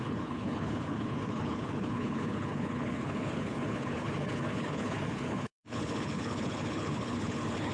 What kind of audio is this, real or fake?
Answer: fake